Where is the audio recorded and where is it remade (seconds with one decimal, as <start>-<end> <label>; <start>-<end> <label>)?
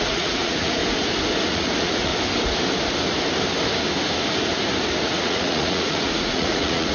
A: 0.0-0.8 remade; 0.8-1.5 recorded; 1.5-2.1 remade; 2.1-5.1 recorded; 5.1-6.9 remade